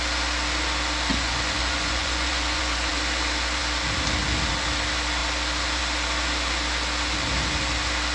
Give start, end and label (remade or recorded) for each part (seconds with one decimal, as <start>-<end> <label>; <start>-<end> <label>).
0.0-1.1 recorded; 1.1-2.9 remade; 2.9-8.1 recorded